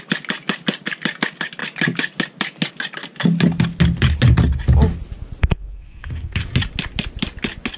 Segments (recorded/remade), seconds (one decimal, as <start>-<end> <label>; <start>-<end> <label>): 0.0-5.4 recorded; 5.4-6.4 remade; 6.4-7.8 recorded